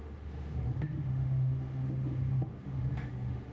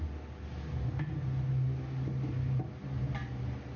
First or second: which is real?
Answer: second